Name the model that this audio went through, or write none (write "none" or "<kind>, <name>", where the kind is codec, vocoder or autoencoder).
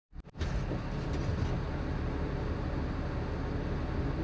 none